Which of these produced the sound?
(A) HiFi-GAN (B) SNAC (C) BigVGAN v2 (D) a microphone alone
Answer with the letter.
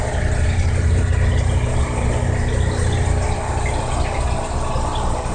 D